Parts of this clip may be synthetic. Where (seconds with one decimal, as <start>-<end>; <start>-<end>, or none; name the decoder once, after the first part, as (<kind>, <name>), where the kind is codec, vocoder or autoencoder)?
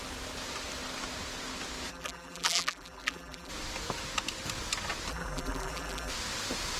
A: 1.9-3.5 (vocoder, BigVGAN v2); 5.1-6.1